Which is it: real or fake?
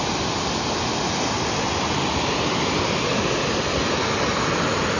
real